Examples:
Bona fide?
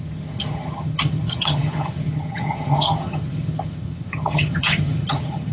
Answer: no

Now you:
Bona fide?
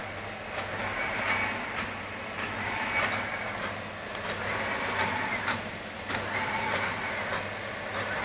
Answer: yes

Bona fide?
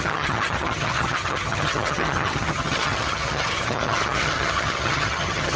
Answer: no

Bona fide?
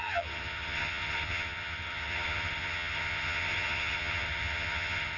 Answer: no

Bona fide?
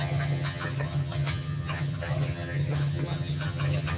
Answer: no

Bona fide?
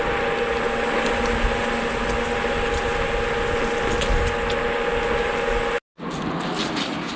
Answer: yes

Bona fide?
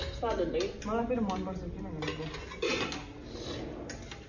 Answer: yes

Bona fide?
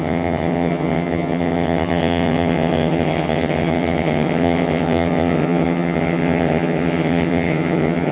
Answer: no